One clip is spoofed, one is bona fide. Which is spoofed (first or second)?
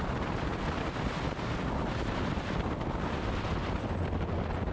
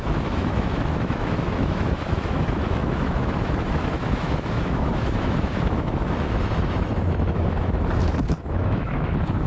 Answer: second